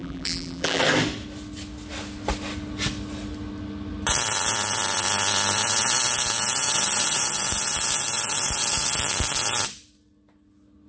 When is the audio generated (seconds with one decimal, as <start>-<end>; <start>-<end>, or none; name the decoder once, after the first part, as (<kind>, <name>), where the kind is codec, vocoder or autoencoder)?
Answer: 0.0-0.8 (vocoder, BigVGAN v2)